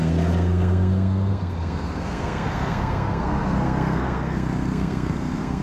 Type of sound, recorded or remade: remade